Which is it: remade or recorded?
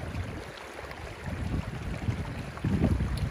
recorded